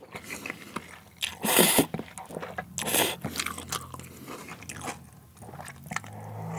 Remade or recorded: recorded